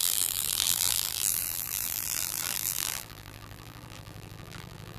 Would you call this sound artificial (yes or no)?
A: yes